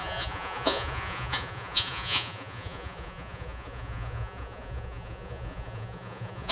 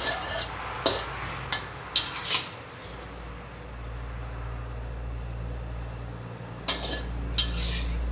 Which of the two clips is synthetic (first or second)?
first